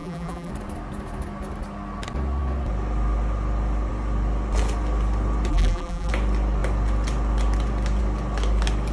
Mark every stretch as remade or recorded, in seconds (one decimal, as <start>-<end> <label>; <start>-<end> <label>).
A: 0.0-0.5 remade; 0.5-5.5 recorded; 5.5-6.1 remade; 6.1-8.9 recorded

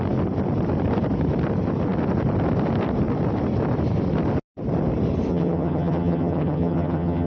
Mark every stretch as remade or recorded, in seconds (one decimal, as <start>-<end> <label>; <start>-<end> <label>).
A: 0.0-5.3 recorded; 5.3-7.3 remade